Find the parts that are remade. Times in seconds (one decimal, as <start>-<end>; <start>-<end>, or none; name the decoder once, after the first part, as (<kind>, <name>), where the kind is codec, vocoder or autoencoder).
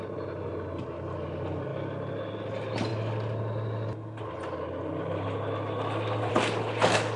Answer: none